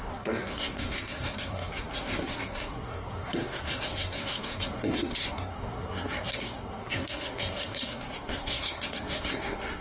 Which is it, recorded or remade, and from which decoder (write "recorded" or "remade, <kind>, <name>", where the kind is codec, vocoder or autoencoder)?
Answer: remade, codec, SNAC